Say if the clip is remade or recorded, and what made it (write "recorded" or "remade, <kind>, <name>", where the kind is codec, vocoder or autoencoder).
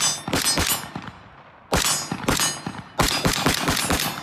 recorded